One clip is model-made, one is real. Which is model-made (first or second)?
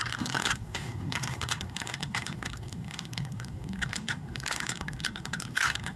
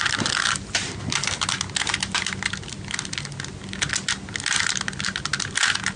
first